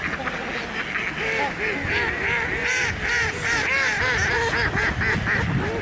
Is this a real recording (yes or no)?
yes